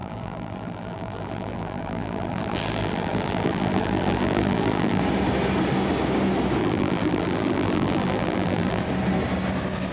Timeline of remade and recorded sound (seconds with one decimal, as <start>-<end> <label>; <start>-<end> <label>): 0.0-5.0 remade; 5.0-6.6 recorded; 6.6-8.8 remade; 8.8-9.9 recorded